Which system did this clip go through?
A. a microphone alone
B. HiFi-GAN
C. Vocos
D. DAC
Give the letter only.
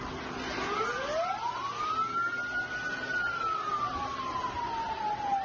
A